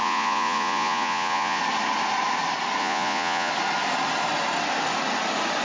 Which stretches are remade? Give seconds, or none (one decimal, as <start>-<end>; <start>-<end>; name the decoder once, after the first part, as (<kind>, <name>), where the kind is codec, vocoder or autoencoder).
0.0-1.6 (vocoder, Vocos); 2.8-3.5